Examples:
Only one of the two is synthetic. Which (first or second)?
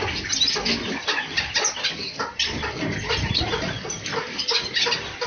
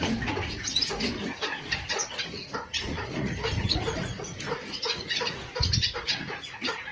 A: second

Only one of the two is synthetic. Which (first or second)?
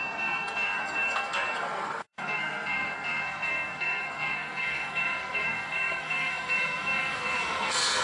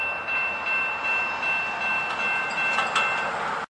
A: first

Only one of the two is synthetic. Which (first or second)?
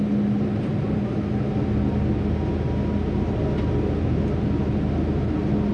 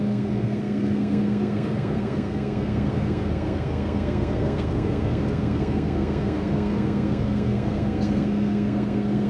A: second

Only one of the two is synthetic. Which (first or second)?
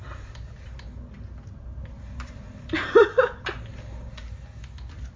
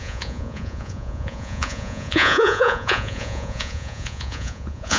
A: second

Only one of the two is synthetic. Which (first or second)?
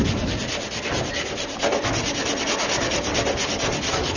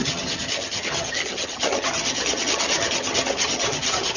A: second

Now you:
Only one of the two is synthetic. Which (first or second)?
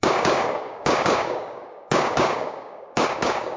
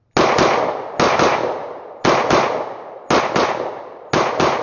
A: first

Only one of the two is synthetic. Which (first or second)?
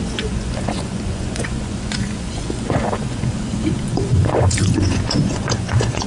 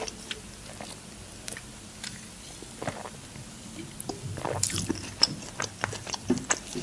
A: first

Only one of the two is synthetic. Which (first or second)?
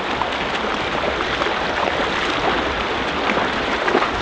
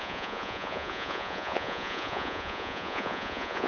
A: second